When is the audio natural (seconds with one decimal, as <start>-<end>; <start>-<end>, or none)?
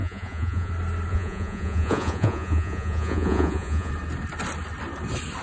0.7-1.1; 3.9-5.4